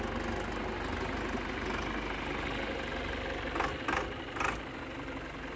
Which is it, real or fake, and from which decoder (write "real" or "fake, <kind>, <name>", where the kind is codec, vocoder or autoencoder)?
real